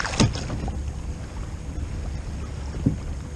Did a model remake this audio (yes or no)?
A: no